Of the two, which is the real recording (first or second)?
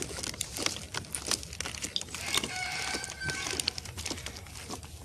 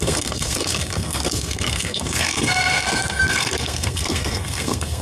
first